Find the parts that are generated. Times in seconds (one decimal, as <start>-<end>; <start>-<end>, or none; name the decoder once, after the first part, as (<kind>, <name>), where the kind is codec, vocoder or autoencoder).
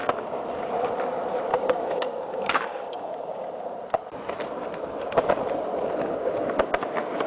0.0-0.7 (codec, DAC); 1.5-3.6